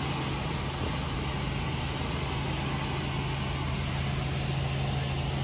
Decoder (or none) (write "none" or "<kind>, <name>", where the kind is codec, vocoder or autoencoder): none